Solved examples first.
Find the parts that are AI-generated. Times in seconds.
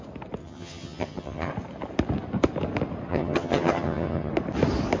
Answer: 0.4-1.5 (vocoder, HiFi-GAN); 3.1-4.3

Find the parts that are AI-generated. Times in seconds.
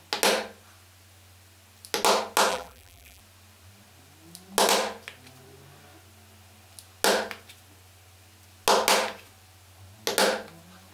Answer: 2.5-3.2 (vocoder, BigVGAN v2)